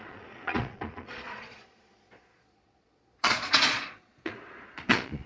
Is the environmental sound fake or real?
fake